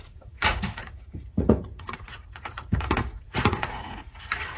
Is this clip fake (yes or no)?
yes